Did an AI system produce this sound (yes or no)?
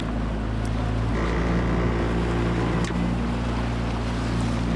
no